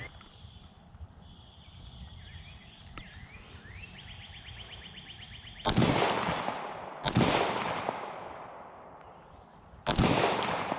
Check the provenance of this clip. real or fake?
real